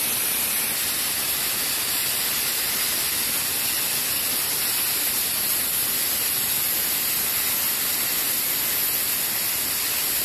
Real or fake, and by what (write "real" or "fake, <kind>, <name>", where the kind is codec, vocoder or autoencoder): real